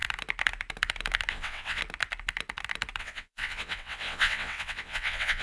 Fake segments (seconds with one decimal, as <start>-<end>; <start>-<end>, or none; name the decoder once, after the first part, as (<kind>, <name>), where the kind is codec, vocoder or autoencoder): 1.3-1.8 (vocoder, WaveNeXt); 3.0-5.4